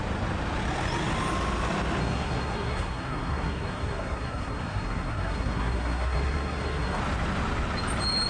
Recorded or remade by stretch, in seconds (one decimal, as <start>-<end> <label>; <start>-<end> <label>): 0.0-2.0 recorded; 2.0-7.0 remade; 7.0-8.3 recorded